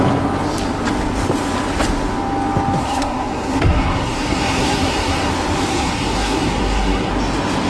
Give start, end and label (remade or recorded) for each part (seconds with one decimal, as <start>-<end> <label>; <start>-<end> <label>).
0.0-2.8 recorded; 2.8-5.3 remade; 5.3-5.7 recorded; 5.7-7.1 remade; 7.1-7.7 recorded